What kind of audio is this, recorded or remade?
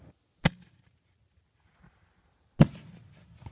recorded